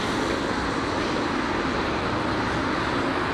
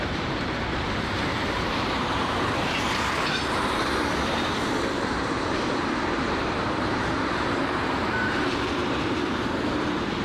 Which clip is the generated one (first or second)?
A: second